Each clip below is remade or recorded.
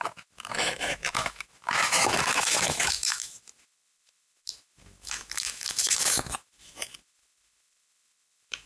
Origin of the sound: remade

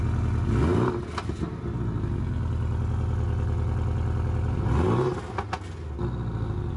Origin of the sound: recorded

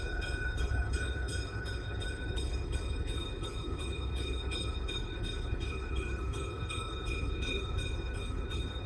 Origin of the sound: remade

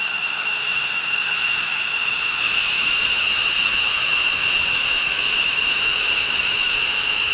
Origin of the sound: remade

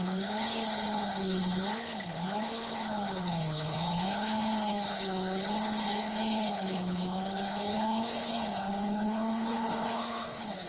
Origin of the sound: remade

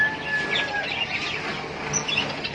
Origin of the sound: recorded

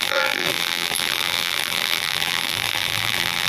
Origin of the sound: remade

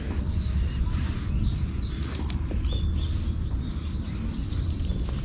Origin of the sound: recorded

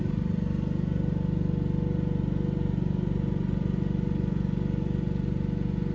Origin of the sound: recorded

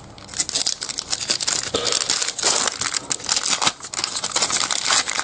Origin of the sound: recorded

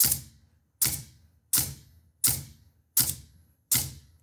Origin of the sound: recorded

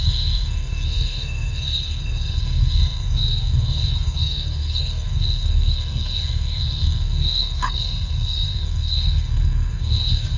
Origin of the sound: remade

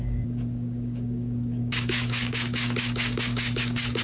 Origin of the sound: remade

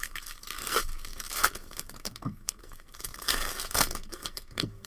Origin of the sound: remade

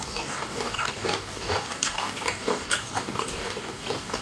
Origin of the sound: remade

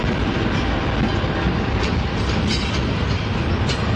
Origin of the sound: recorded